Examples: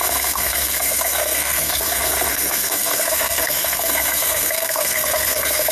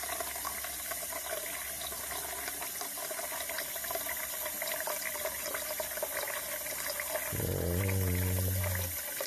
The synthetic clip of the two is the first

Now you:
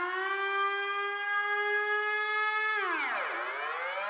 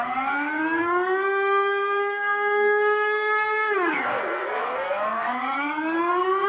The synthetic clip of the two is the second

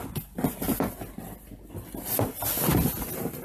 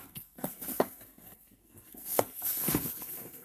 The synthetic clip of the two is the second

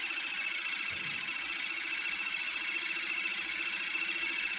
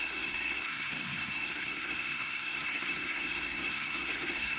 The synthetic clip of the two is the second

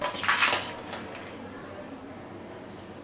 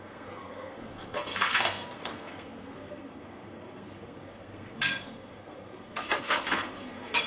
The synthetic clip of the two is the second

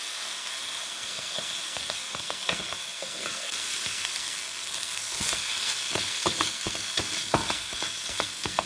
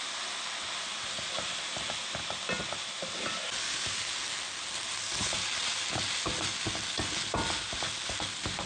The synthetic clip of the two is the first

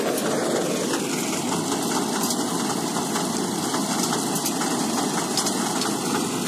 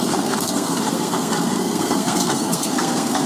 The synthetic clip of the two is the second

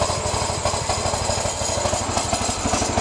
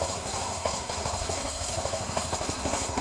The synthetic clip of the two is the second